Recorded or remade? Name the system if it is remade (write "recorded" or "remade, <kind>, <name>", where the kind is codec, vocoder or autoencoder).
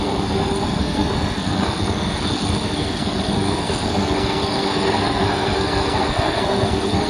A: remade, codec, SNAC